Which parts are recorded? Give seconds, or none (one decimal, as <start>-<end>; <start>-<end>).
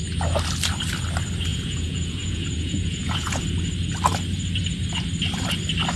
0.0-1.5; 3.4-6.0